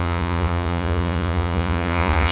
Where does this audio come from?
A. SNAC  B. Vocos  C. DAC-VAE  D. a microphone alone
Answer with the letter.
B